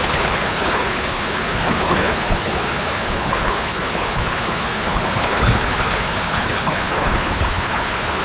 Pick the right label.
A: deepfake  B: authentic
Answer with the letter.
A